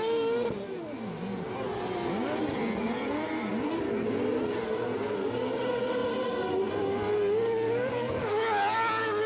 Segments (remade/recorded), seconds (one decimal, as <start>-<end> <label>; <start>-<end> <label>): 0.0-9.3 recorded